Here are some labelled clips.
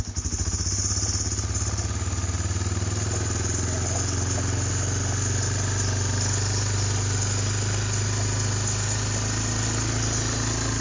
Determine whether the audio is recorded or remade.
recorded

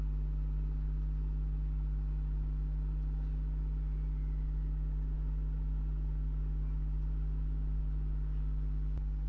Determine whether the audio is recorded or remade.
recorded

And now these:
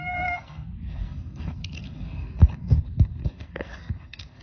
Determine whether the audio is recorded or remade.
remade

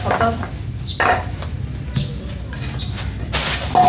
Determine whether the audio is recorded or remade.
recorded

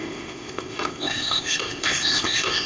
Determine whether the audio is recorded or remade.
remade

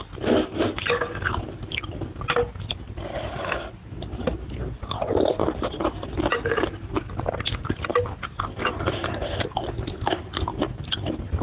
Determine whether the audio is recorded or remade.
recorded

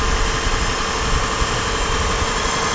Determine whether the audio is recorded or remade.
recorded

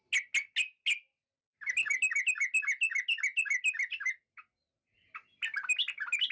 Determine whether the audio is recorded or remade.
recorded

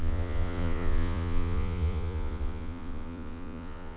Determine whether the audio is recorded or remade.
remade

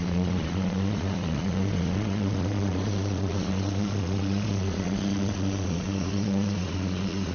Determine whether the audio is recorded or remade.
remade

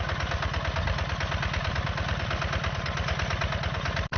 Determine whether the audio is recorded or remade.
recorded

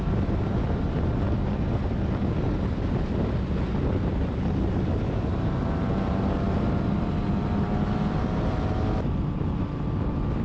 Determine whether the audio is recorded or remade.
recorded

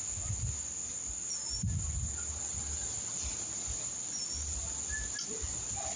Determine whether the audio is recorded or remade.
recorded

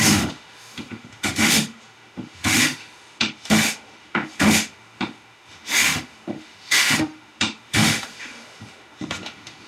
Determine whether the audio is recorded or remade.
remade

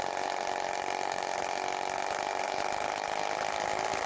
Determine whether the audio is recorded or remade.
recorded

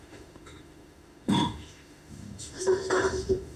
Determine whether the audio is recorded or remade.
remade